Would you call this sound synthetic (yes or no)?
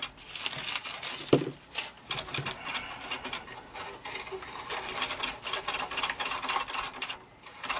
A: no